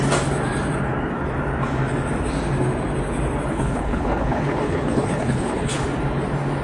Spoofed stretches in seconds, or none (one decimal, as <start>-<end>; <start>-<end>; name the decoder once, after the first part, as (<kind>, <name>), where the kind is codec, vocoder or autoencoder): 3.5-5.8 (codec, HILCodec)